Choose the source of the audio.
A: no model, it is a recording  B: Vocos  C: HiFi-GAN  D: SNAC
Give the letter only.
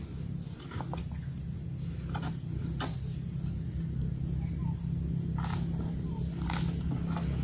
A